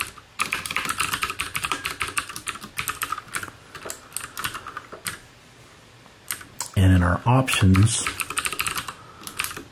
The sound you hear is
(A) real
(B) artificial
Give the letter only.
A